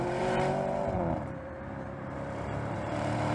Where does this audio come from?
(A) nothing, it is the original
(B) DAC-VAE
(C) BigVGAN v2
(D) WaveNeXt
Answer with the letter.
C